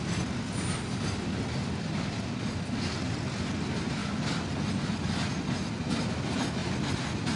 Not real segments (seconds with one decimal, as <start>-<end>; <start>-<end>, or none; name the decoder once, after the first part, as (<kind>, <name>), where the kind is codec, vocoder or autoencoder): none